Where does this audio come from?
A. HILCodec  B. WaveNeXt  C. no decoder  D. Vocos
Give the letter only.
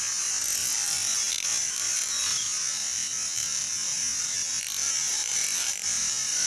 C